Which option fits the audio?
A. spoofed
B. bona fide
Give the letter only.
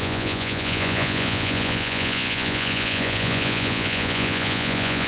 A